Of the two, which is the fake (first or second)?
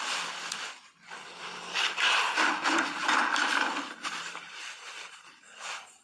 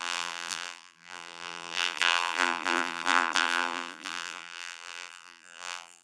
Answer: second